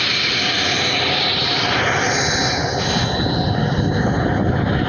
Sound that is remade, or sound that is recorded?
recorded